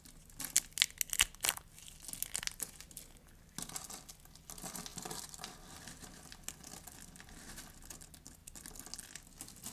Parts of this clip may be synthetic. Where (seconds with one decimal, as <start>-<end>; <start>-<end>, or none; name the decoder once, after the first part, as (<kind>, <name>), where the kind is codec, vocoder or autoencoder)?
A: none